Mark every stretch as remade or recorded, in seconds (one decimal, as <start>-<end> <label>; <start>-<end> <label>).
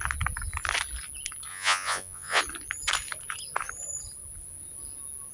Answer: 0.0-1.5 recorded; 1.5-2.4 remade; 2.4-5.3 recorded